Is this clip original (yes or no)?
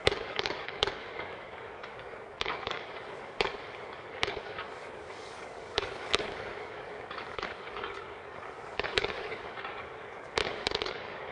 no